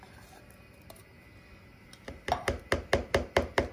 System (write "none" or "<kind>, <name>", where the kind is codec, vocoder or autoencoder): none